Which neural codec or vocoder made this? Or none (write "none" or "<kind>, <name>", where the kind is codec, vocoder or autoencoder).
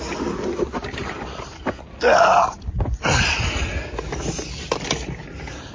none